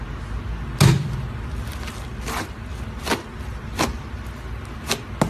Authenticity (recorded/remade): recorded